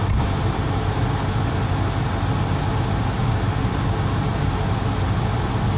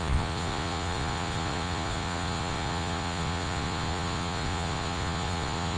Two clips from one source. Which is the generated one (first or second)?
second